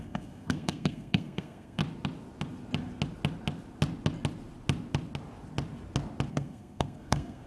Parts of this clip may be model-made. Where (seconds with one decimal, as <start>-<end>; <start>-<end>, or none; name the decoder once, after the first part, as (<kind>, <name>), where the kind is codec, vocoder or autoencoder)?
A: 0.0-1.8 (codec, SNAC); 6.3-7.5